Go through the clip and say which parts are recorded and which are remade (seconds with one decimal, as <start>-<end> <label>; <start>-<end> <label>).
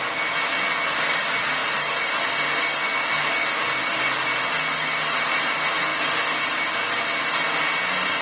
0.0-8.2 recorded